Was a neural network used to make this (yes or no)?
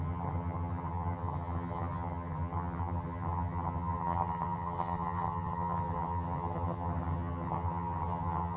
yes